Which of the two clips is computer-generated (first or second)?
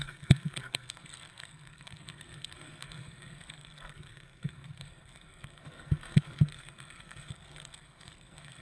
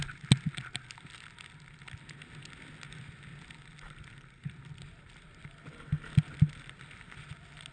first